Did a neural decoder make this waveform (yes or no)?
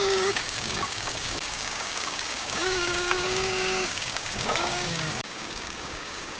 yes